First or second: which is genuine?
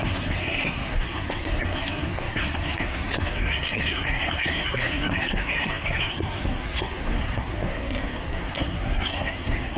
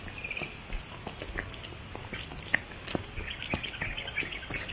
second